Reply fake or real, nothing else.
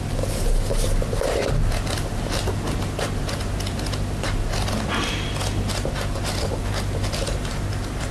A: real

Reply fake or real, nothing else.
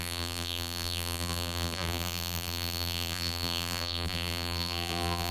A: fake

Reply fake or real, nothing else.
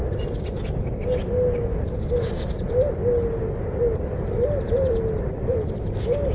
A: real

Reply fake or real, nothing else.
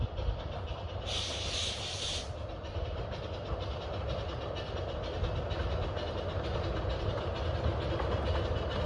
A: real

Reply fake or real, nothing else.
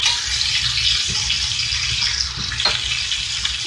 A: real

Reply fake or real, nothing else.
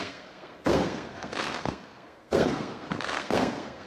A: fake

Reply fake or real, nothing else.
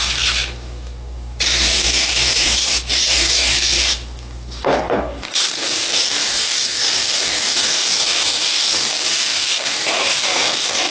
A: fake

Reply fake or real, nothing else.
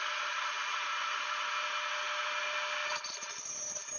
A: real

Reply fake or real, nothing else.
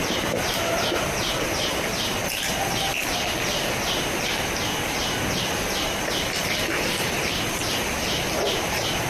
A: real